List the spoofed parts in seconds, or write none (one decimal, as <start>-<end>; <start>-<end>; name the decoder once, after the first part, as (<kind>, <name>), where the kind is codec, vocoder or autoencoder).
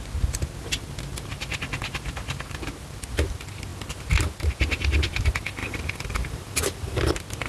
5.6-7.1 (vocoder, BigVGAN v2)